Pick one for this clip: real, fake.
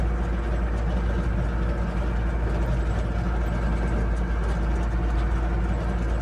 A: real